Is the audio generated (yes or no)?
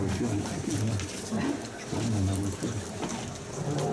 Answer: no